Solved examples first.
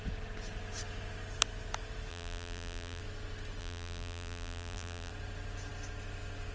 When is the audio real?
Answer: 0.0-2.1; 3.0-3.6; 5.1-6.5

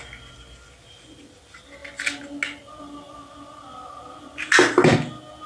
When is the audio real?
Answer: 0.0-5.5

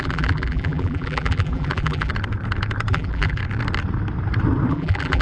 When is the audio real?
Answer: 2.1-2.9; 3.4-4.7

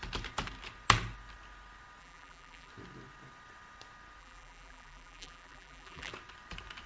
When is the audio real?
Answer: 0.0-2.0; 2.7-4.2; 6.1-6.9

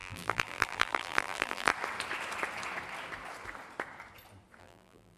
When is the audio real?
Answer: 1.7-4.6

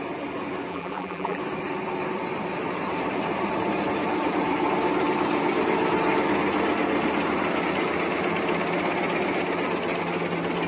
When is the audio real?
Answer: 0.0-0.7; 1.4-10.7

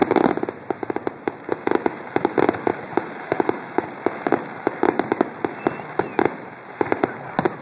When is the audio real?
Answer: 1.5-2.7; 6.0-7.6